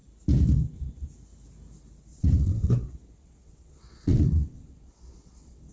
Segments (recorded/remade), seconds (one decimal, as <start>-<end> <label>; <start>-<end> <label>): 0.0-2.1 recorded; 2.1-5.7 remade